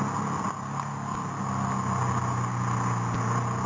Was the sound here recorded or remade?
recorded